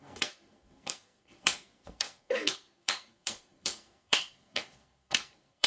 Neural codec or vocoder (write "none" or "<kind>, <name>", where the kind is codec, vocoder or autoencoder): codec, SNAC